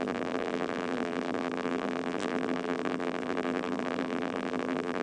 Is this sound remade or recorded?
remade